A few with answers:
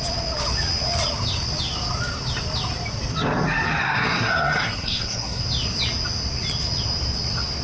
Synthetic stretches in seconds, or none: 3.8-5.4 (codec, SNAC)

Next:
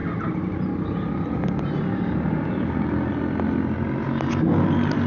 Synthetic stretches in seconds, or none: none